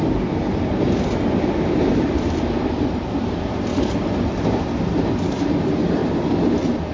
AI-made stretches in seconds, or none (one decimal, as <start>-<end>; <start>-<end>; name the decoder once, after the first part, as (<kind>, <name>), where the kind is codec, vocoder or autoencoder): 0.0-0.8 (vocoder, BigVGAN v2); 1.7-3.7; 4.9-6.0